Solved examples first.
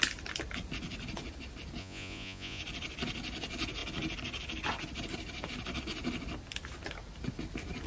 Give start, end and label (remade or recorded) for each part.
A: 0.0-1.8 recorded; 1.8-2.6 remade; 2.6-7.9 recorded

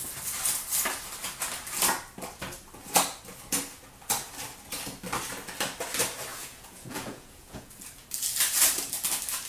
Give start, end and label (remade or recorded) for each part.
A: 0.0-6.3 recorded; 6.3-7.7 remade; 7.7-9.5 recorded

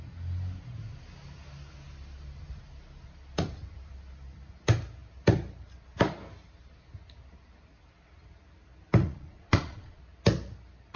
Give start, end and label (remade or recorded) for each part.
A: 0.0-9.0 recorded; 9.0-10.0 remade; 10.0-11.0 recorded